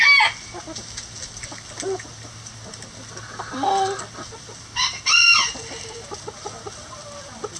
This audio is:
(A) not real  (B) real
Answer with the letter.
B